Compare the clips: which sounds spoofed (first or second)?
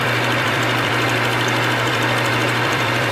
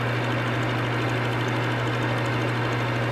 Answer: first